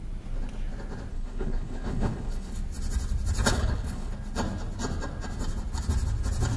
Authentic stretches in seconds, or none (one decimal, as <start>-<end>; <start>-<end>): 0.0-1.1; 2.6-3.5; 4.1-6.6